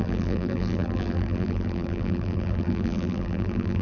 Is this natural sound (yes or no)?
no